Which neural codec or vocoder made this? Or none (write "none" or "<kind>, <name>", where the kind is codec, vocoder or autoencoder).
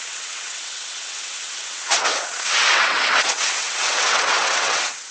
vocoder, WaveNeXt